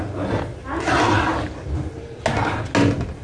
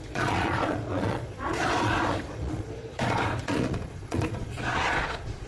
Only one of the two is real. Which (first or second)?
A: first